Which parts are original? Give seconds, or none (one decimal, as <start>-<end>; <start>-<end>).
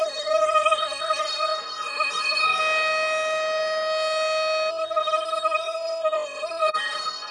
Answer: 2.6-4.7